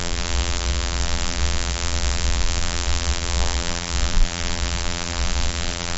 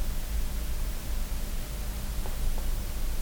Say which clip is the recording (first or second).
second